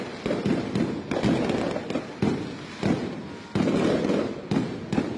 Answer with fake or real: real